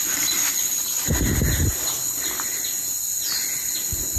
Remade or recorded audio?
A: recorded